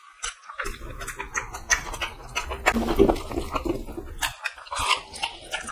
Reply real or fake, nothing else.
real